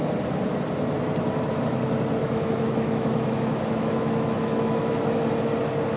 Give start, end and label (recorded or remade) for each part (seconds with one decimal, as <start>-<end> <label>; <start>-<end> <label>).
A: 0.0-2.2 recorded; 2.2-5.3 remade; 5.3-6.0 recorded